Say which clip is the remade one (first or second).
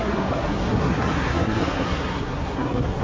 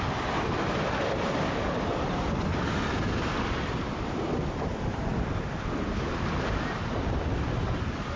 first